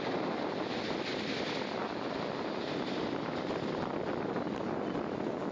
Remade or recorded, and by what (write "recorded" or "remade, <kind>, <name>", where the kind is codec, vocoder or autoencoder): recorded